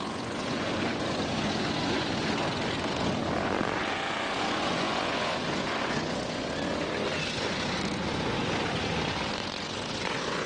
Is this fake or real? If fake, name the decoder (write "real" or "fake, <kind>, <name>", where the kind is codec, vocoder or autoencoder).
fake, vocoder, Vocos